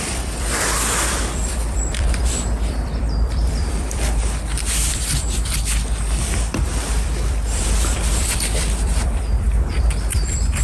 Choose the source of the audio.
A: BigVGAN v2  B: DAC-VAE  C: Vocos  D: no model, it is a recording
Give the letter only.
A